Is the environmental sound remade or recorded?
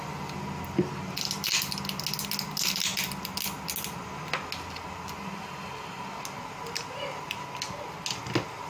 recorded